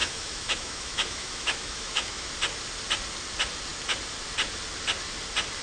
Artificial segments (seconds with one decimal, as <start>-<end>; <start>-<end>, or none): 0.0-2.3